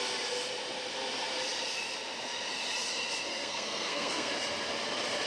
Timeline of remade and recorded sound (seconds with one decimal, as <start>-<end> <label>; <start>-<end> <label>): 0.0-3.3 recorded; 3.3-4.3 remade; 4.3-5.3 recorded